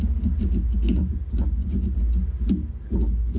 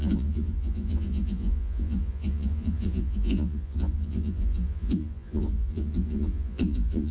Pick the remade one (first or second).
second